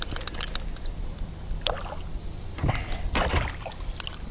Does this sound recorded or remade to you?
recorded